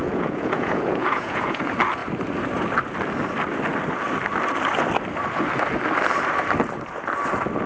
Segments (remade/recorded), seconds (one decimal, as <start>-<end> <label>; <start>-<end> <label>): 0.0-1.6 remade; 1.6-7.7 recorded